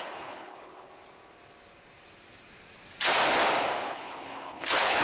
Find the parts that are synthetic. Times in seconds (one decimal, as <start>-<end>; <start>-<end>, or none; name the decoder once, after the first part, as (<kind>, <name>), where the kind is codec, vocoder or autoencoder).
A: 0.0-0.9 (codec, HILCodec); 3.9-5.0

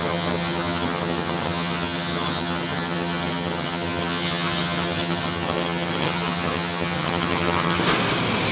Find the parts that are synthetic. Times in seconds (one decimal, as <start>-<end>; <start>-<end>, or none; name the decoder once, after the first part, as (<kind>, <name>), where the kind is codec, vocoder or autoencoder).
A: 0.0-7.8 (vocoder, HiFi-GAN)

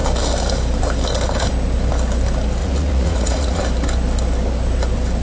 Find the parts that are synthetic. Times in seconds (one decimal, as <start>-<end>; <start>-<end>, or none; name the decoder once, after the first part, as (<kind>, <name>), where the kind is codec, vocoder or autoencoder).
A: 2.6-3.6 (vocoder, Vocos)

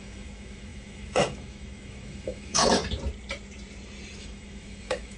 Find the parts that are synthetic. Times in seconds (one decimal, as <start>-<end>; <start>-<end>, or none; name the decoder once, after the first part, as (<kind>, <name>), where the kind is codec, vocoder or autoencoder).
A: 0.0-2.8 (autoencoder, DAC-VAE); 4.2-5.2

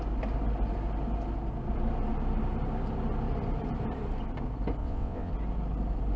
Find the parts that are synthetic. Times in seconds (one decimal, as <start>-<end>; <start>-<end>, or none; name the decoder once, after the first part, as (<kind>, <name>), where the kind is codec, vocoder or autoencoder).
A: 4.8-5.3 (vocoder, WaveNeXt)

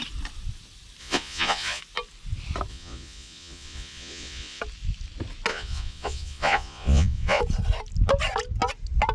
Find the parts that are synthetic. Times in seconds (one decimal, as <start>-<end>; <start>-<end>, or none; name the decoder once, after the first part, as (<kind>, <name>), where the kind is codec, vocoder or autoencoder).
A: 1.0-1.8 (vocoder, Vocos); 2.7-4.6; 5.5-7.4

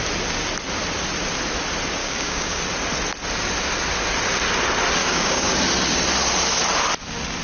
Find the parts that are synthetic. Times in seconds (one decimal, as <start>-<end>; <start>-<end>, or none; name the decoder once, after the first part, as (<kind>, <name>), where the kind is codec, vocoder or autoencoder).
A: 2.0-2.6 (codec, DAC); 5.0-5.5